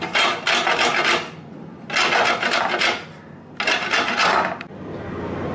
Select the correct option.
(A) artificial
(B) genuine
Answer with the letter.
B